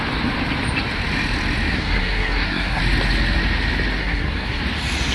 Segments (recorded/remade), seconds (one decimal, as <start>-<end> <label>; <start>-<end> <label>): 0.0-1.7 recorded; 1.7-2.8 remade; 2.8-4.0 recorded; 4.0-4.6 remade; 4.6-5.1 recorded